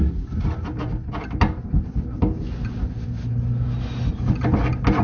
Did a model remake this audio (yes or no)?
no